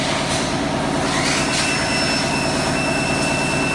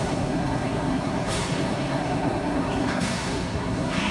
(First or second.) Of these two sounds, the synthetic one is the second